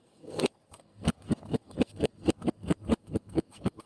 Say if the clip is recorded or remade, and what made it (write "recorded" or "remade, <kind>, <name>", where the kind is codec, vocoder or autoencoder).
remade, codec, SNAC